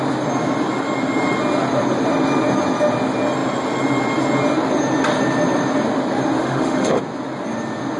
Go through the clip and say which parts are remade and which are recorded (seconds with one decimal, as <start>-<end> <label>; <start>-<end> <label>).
0.0-6.4 recorded; 6.4-7.0 remade; 7.0-8.0 recorded